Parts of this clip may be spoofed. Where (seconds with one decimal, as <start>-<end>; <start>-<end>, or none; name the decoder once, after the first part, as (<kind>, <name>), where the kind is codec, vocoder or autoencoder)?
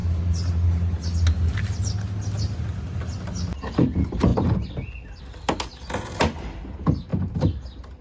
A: 0.0-0.5 (vocoder, BigVGAN v2)